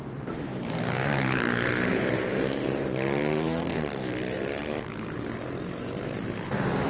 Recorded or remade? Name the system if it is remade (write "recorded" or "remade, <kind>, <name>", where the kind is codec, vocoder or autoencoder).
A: remade, vocoder, BigVGAN v2